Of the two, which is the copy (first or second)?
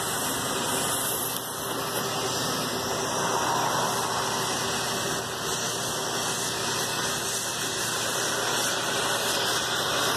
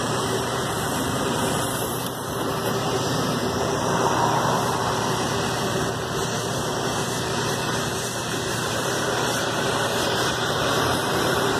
second